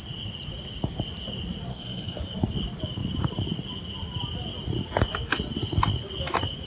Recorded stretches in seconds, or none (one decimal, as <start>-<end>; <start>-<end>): 0.0-1.7; 2.2-6.7